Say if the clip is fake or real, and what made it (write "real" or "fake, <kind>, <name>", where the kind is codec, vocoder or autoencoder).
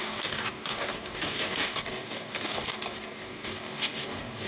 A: fake, codec, DAC